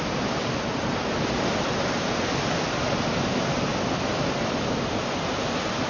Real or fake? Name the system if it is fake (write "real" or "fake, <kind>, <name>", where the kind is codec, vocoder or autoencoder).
real